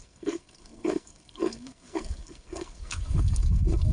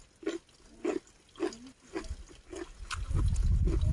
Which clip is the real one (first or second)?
second